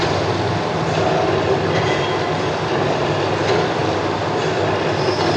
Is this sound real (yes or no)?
yes